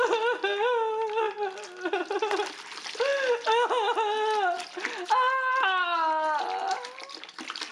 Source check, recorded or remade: recorded